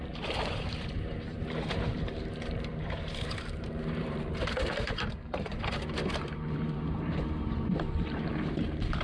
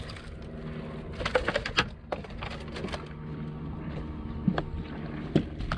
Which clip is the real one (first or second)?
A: second